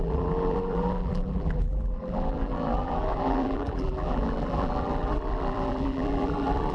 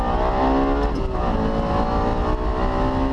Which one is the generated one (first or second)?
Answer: first